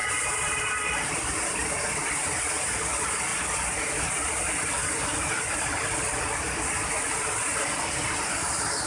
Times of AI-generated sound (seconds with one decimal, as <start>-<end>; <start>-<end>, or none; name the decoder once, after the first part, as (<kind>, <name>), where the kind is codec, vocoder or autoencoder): none